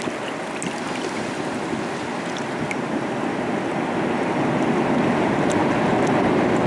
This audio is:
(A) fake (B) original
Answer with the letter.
B